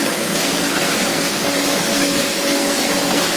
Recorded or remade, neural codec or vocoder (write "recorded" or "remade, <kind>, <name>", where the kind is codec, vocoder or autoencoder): remade, codec, SNAC